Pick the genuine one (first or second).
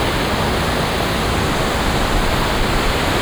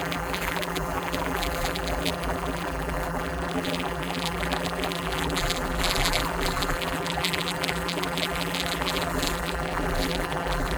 first